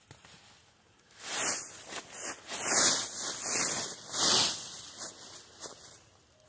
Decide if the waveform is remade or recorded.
recorded